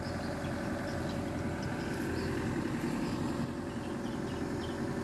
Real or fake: real